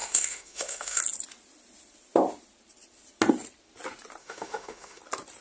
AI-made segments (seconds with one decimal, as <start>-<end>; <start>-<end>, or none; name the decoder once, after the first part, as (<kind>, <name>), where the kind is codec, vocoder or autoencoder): 0.0-1.0 (autoencoder, DAC-VAE); 4.2-5.0